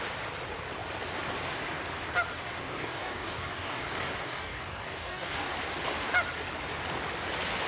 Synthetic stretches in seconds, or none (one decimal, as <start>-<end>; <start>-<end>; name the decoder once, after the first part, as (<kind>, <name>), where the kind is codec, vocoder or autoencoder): 2.6-5.5 (codec, DAC)